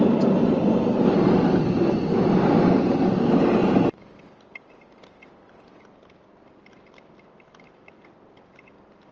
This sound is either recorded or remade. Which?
recorded